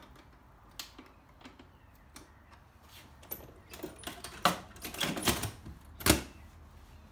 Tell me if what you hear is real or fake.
real